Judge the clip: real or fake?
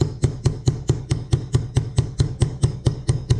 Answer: fake